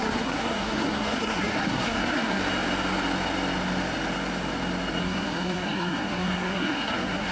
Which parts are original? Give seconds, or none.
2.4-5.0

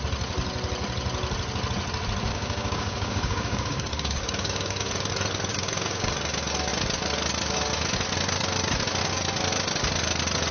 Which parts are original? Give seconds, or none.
0.0-2.3; 5.1-5.5; 6.1-10.5

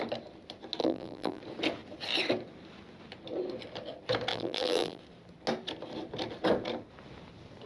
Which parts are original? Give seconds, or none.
0.0-0.8; 1.4-4.3; 5.0-7.7

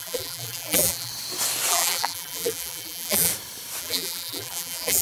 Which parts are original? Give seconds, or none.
1.1-1.7; 3.3-3.8